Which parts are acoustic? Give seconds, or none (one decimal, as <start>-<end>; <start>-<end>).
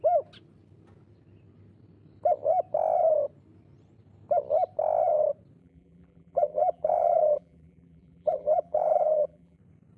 0.0-5.6; 9.6-10.0